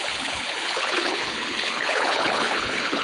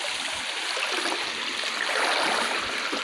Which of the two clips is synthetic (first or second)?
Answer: first